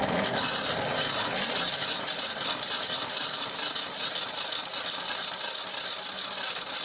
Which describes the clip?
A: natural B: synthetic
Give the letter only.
A